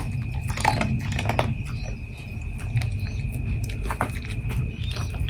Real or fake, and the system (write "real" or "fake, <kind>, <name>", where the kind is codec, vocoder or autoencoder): real